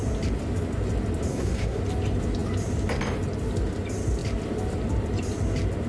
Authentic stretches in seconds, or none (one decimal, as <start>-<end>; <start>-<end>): 0.0-1.3; 1.8-5.9